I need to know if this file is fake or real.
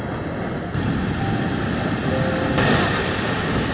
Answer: real